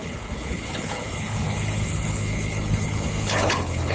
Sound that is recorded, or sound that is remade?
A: remade